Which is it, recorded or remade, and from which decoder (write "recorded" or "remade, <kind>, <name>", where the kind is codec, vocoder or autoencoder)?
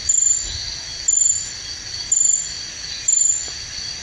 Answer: recorded